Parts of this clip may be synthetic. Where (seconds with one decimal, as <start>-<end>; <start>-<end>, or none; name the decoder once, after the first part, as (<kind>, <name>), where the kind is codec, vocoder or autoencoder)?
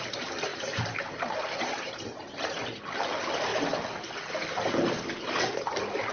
0.0-3.5 (vocoder, BigVGAN v2); 4.5-6.1